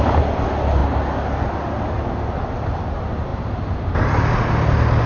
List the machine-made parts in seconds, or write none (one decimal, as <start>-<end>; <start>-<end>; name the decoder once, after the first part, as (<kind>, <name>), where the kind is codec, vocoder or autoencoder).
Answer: 0.8-1.4 (vocoder, BigVGAN v2)